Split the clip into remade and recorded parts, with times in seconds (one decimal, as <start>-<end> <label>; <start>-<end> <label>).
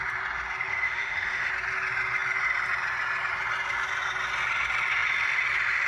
0.0-0.7 recorded; 0.7-1.5 remade; 1.5-5.9 recorded